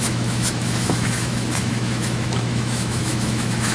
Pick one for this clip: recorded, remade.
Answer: remade